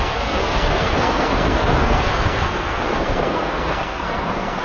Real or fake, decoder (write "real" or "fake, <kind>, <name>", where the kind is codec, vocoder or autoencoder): fake, codec, SNAC